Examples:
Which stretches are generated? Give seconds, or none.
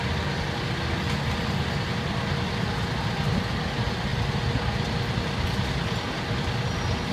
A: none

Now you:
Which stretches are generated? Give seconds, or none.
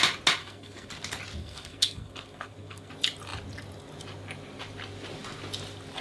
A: 0.4-0.9; 1.4-2.9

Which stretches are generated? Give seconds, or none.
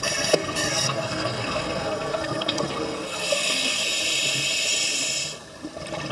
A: 0.0-3.8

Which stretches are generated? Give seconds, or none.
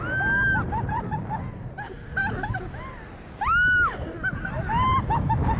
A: none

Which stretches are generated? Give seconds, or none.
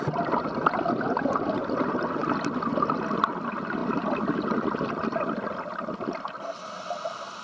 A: none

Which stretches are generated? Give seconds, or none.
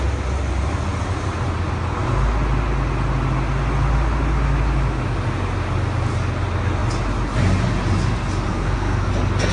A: 8.5-9.1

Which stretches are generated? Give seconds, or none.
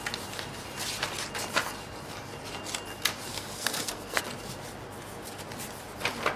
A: 3.3-4.2